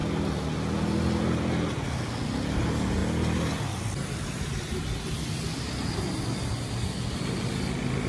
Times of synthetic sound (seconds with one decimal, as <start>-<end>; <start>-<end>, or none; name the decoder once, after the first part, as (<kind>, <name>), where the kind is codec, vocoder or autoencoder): none